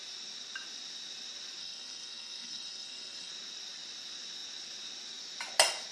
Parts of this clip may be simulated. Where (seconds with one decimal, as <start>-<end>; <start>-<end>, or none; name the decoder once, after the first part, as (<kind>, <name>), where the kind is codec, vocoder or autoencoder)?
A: 1.6-3.3 (codec, SNAC)